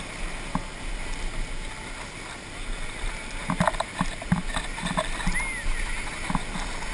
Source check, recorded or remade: recorded